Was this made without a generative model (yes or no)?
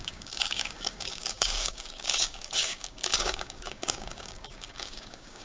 no